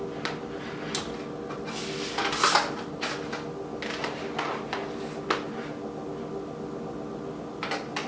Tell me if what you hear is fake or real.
real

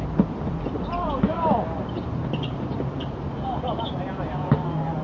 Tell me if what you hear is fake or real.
real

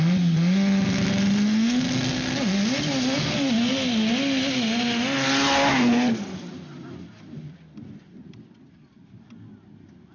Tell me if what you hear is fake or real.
real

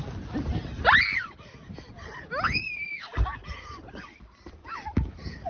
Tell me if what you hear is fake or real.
real